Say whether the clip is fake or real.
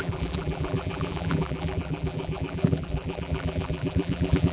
fake